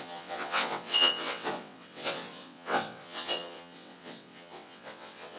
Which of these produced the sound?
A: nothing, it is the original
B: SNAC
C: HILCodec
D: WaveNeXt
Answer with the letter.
D